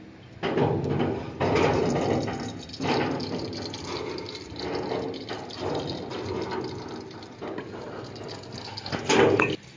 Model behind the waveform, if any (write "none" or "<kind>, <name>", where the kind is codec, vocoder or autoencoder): none